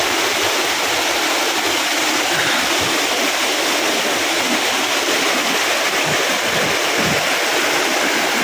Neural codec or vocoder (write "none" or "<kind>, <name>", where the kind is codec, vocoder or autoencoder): vocoder, BigVGAN v2